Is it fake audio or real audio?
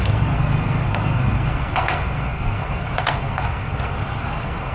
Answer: fake